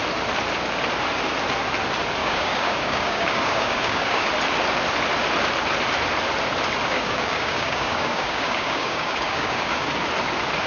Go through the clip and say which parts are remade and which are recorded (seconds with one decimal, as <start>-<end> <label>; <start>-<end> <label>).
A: 0.0-2.2 recorded; 2.2-4.3 remade; 4.3-6.8 recorded; 6.8-9.9 remade; 9.9-10.7 recorded